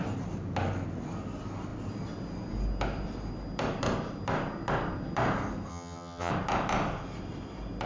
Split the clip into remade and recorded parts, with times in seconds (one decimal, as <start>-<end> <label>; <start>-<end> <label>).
0.0-5.7 recorded; 5.7-6.3 remade; 6.3-7.9 recorded